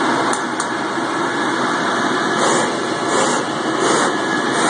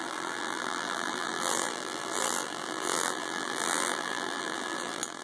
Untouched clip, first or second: first